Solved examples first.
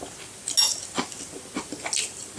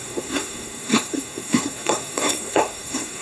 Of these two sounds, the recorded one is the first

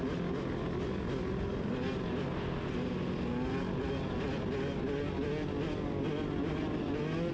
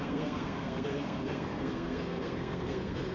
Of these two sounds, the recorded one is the first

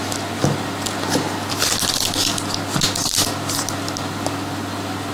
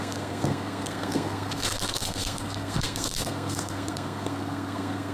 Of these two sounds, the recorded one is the first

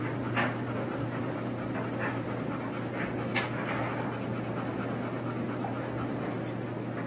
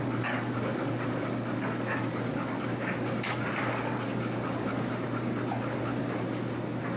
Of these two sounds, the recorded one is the first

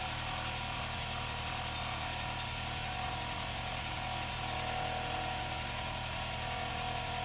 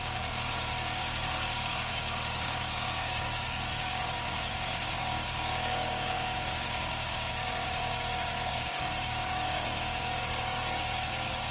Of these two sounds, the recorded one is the first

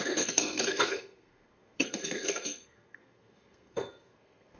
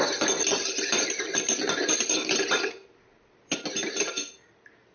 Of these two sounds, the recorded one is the second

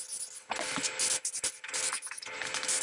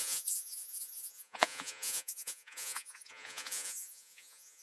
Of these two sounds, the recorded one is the first